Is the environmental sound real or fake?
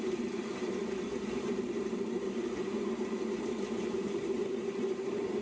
fake